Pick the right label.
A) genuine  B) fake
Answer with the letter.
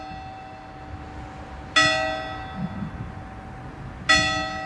A